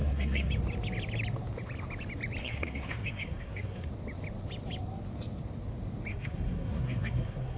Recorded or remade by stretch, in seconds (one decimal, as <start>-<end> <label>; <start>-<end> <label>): 0.0-0.5 remade; 0.5-2.4 recorded; 2.4-3.9 remade; 3.9-6.1 recorded; 6.1-7.6 remade